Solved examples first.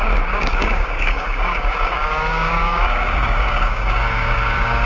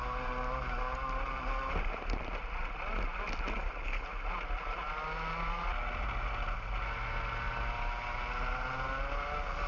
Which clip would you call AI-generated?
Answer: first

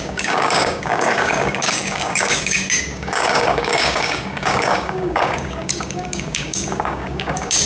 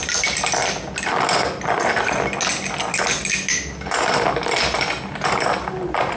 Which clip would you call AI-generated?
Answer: first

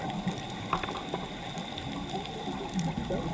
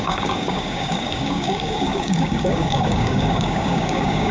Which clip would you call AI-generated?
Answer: second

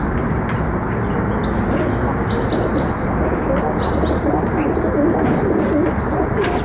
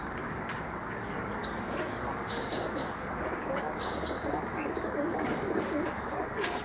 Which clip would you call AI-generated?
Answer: second